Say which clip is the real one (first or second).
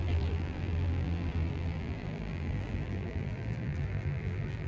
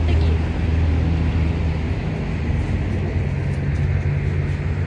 second